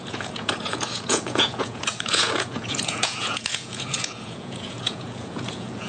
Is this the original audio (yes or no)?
no